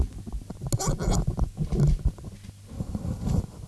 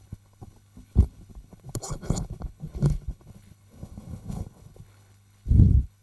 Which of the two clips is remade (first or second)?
second